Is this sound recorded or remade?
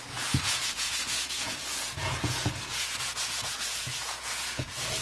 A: remade